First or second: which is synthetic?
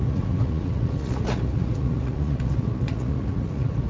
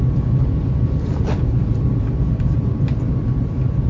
first